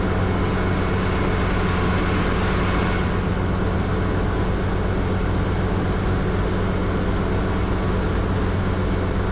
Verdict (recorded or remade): recorded